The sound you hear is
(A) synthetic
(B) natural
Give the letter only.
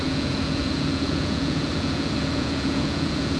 A